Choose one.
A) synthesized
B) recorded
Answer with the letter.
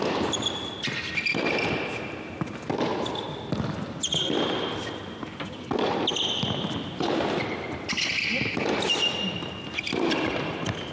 B